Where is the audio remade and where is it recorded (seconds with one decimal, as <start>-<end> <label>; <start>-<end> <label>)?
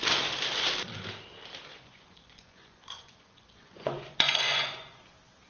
0.0-1.7 recorded; 1.7-5.0 remade; 5.0-5.5 recorded